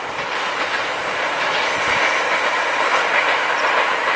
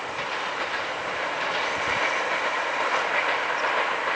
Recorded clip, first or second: first